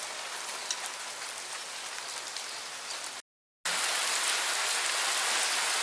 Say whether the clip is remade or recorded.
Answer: recorded